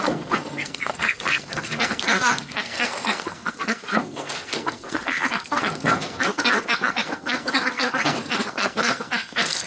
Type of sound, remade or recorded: remade